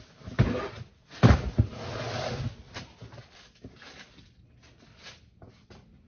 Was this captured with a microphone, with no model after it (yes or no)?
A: yes